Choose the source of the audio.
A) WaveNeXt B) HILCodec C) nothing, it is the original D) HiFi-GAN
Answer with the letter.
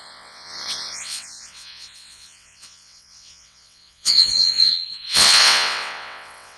A